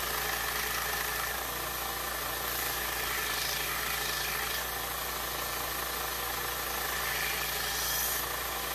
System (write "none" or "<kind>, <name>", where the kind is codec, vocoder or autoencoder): none